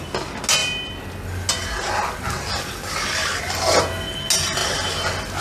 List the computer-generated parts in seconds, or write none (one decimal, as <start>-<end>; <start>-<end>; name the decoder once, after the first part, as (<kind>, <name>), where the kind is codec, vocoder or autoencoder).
none